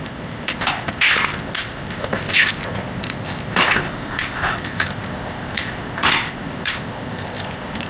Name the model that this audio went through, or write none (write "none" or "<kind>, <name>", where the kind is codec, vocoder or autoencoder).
codec, ZipCodec